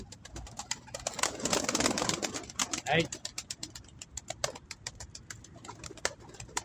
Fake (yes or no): no